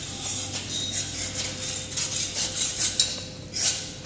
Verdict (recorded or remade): recorded